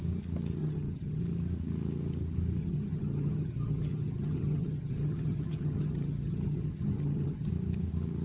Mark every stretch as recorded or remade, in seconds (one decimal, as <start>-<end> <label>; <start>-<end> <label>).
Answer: 0.0-0.6 recorded; 0.6-1.2 remade; 1.2-2.6 recorded; 2.6-7.5 remade; 7.5-8.2 recorded

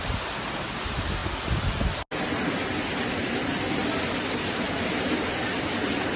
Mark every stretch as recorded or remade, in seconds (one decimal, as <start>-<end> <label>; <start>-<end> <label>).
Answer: 0.0-6.2 recorded

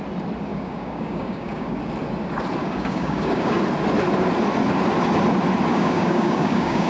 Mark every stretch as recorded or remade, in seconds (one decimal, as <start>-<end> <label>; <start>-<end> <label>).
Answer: 0.0-0.5 recorded; 0.5-1.8 remade; 1.8-2.6 recorded; 2.6-3.6 remade; 3.6-5.7 recorded; 5.7-6.9 remade

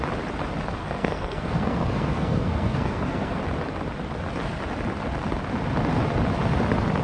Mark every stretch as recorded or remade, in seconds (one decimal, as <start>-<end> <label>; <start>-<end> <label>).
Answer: 0.0-0.8 recorded; 0.8-3.4 remade; 3.4-7.0 recorded